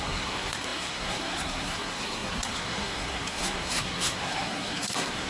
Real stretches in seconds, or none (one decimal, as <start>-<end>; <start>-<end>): none